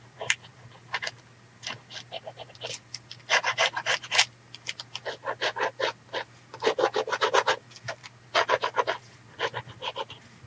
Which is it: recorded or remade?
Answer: recorded